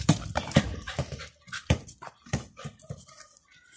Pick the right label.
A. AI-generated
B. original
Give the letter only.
A